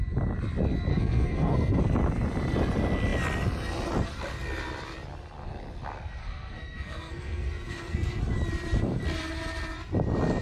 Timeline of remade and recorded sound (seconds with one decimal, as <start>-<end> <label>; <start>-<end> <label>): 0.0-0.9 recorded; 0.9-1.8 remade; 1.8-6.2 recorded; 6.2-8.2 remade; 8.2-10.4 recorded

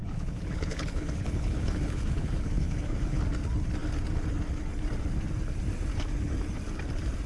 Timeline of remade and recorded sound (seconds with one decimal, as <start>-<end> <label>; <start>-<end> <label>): 0.0-3.2 remade; 3.2-7.3 recorded

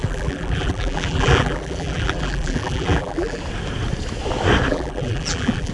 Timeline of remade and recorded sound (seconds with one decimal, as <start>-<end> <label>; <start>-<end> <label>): 0.0-3.4 remade; 3.4-4.7 recorded; 4.7-5.7 remade

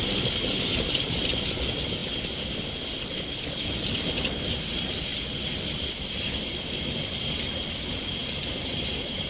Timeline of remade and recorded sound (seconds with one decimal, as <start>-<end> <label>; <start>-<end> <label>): 0.0-9.3 recorded

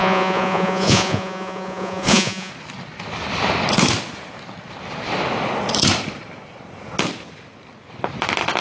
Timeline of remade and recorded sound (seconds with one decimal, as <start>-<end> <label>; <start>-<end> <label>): 0.0-2.5 remade; 2.5-8.6 recorded

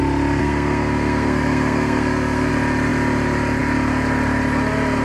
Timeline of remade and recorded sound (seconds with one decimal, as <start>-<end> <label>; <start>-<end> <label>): 0.0-0.4 recorded; 0.4-2.5 remade; 2.5-5.0 recorded